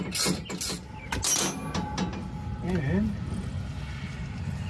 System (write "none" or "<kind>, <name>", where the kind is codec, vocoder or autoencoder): none